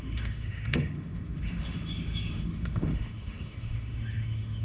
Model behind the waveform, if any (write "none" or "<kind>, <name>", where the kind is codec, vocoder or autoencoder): autoencoder, DAC-VAE